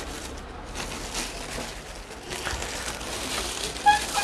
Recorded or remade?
recorded